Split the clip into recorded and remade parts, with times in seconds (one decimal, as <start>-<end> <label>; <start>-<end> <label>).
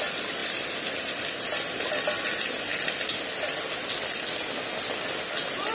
0.0-5.7 recorded